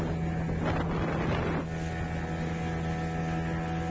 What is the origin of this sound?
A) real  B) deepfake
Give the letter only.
A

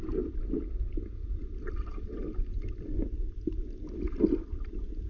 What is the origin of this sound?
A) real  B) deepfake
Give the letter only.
A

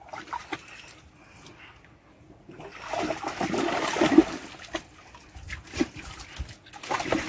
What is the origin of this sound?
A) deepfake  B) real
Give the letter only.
B